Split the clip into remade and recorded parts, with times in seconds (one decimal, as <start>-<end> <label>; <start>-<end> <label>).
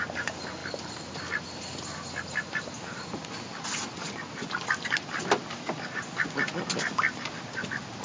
0.0-0.6 recorded; 0.6-1.2 remade; 1.2-8.0 recorded